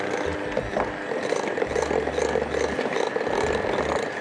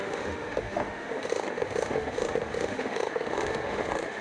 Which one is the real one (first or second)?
first